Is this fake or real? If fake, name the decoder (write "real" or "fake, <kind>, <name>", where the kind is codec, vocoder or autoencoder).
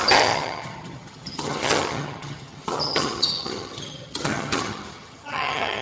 fake, vocoder, HiFi-GAN